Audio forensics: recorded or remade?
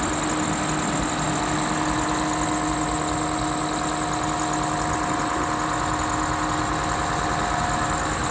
recorded